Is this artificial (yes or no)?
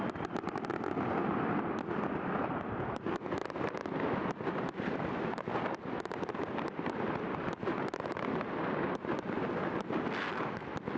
no